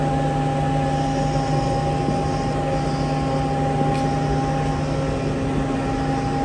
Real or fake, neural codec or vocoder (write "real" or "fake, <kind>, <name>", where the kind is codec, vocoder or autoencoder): real